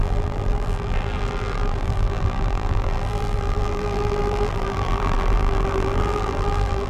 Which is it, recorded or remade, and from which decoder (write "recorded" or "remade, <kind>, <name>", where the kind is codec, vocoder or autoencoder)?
remade, vocoder, BigVGAN v2